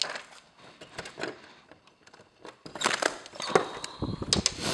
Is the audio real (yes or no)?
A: yes